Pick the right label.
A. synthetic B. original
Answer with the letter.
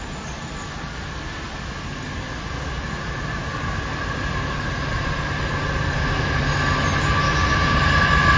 B